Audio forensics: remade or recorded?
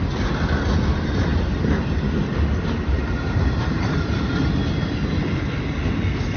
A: recorded